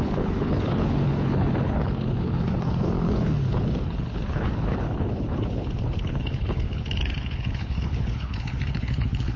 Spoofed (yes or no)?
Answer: yes